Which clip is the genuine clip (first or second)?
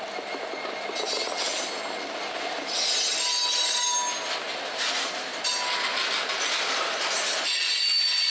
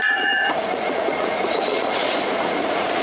first